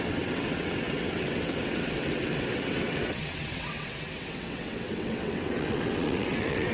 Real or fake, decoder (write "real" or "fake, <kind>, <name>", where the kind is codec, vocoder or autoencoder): fake, vocoder, WaveNeXt